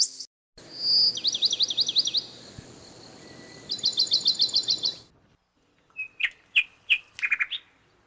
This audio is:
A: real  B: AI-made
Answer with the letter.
A